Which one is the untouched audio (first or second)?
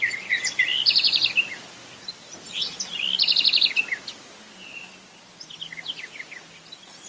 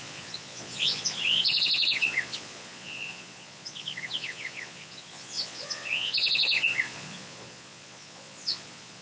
first